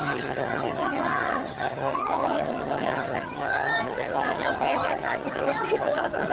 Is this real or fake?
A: fake